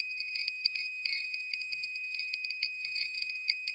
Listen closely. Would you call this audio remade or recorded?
remade